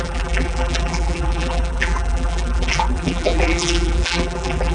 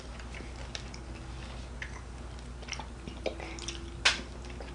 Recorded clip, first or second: second